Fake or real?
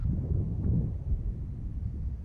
real